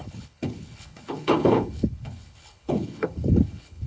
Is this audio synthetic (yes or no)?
yes